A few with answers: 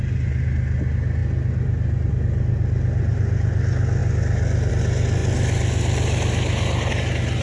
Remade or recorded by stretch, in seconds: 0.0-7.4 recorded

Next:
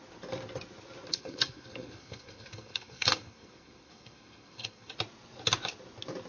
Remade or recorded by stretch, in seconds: 0.0-1.1 recorded; 1.1-4.9 remade; 4.9-6.3 recorded

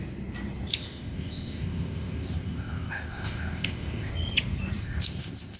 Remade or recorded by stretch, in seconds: 0.0-0.7 recorded; 0.7-4.1 remade; 4.1-4.8 recorded; 4.8-5.6 remade

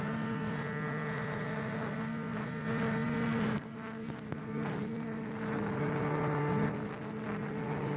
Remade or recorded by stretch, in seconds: 0.0-8.0 recorded

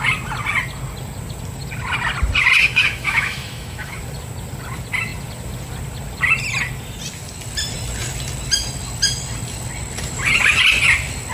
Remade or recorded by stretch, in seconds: 0.0-2.6 recorded; 2.6-4.0 remade; 4.0-11.3 recorded